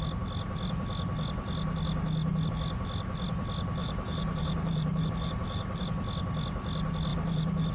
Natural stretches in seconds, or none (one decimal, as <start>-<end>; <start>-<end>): 0.0-3.8; 5.8-7.1